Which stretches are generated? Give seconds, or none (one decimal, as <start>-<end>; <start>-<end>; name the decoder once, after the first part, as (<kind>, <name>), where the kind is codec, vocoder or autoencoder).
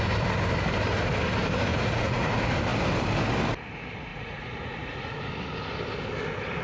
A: 1.7-2.3 (vocoder, Vocos); 4.1-5.3